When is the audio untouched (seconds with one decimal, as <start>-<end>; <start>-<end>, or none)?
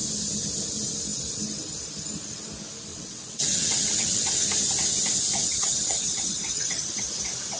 0.0-2.9; 4.4-5.4; 7.1-7.6